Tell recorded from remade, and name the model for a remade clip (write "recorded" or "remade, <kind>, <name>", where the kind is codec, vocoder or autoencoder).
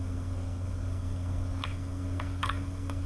remade, codec, SNAC